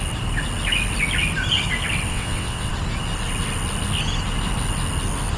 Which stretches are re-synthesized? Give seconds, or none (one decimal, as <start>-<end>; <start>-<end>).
2.1-2.7